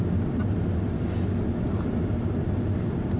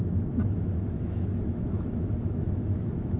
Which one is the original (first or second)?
first